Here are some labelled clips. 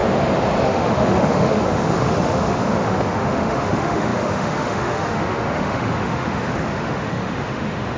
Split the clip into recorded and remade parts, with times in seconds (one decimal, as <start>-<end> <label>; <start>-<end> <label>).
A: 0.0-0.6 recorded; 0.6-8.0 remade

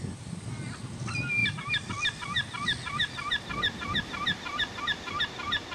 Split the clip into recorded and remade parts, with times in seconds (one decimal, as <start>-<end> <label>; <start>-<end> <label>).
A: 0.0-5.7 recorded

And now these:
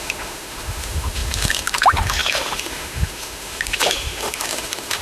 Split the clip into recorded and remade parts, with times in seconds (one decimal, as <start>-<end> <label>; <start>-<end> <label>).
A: 0.0-5.0 remade